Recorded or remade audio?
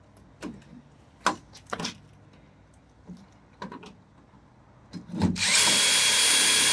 recorded